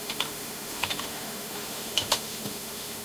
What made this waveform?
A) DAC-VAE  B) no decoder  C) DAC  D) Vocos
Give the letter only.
A